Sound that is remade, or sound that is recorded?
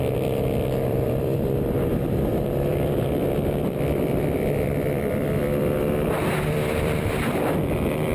remade